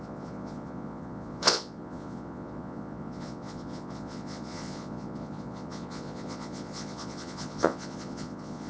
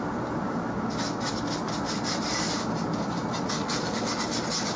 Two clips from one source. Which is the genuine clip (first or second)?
second